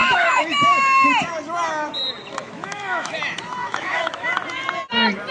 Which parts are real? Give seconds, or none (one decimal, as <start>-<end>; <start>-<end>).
1.1-2.4; 3.1-3.6; 4.3-5.3